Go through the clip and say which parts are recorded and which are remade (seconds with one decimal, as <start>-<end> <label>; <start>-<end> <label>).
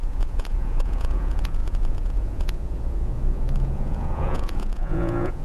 0.0-5.4 remade